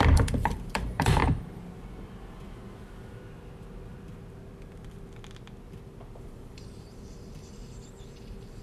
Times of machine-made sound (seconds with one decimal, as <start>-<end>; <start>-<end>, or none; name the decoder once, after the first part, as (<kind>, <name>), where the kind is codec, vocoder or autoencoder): 0.0-1.2 (vocoder, BigVGAN v2); 6.2-8.6